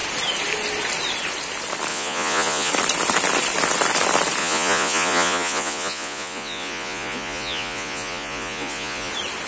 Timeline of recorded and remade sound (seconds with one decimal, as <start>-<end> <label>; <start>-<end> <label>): 0.0-1.9 recorded; 1.9-2.7 remade; 2.7-4.4 recorded; 4.4-9.1 remade; 9.1-9.5 recorded